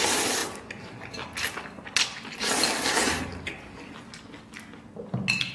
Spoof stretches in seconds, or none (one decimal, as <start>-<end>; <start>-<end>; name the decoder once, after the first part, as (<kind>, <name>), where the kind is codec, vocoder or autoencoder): none